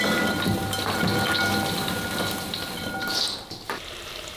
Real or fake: real